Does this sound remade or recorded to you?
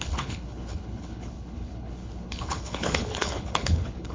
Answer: remade